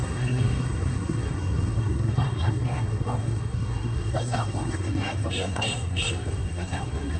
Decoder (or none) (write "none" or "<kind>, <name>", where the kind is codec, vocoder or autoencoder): codec, SNAC